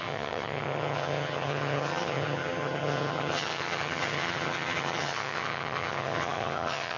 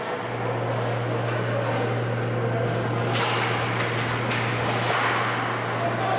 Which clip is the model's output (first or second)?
first